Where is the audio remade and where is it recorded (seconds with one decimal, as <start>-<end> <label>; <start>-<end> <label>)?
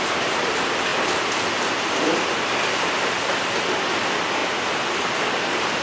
0.0-5.8 recorded